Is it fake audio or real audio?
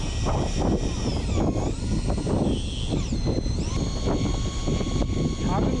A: real